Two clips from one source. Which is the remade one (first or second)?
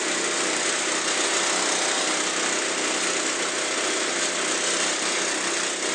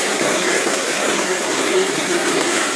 second